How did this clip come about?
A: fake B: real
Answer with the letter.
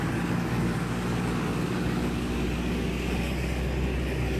A